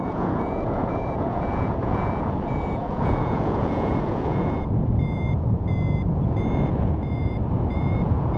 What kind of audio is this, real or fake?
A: fake